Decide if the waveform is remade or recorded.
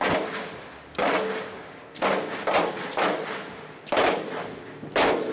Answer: recorded